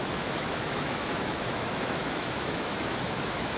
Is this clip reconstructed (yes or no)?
yes